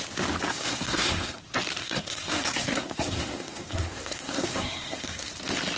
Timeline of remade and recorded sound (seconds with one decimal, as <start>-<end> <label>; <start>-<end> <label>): 0.0-0.5 recorded; 0.5-1.4 remade; 1.4-1.8 recorded; 1.8-5.3 remade; 5.3-5.8 recorded